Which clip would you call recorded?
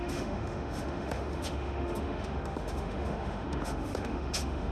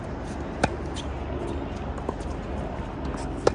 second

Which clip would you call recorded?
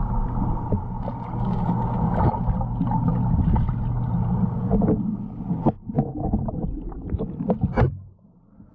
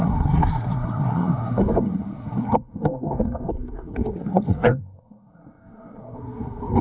first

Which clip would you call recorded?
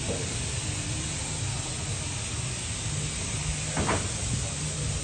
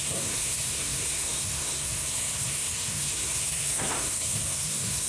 first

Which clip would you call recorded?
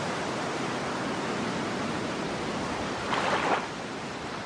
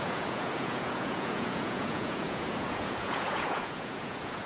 first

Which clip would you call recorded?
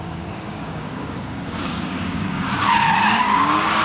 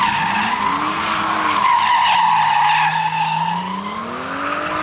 second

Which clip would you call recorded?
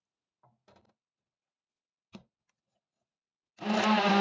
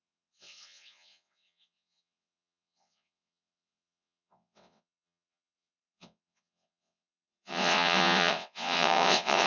first